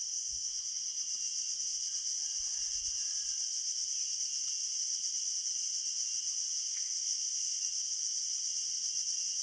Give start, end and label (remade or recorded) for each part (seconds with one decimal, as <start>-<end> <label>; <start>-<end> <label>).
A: 0.0-0.5 remade; 0.5-6.6 recorded; 6.6-7.6 remade; 7.6-9.4 recorded